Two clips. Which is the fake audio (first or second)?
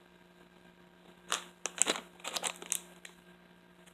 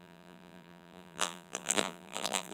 second